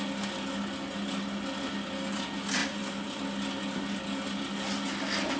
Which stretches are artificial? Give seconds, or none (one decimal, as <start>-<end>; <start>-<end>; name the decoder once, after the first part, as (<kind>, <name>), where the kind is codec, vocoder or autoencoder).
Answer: 2.6-3.2 (vocoder, BigVGAN v2)